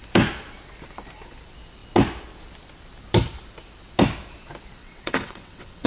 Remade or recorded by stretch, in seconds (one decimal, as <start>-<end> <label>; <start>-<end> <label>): 0.0-4.8 recorded; 4.8-5.9 remade